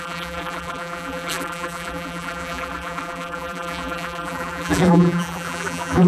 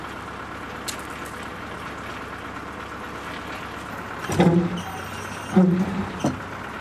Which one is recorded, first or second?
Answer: second